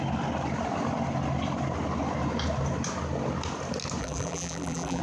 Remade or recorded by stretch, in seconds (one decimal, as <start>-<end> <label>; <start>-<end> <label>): 0.0-4.0 recorded; 4.0-5.0 remade